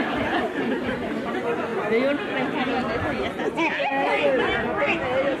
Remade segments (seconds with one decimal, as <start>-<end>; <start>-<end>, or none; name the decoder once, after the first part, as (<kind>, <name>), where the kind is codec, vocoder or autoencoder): none